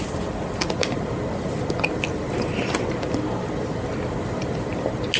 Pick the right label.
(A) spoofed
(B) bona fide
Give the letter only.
B